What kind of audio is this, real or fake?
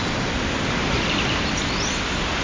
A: real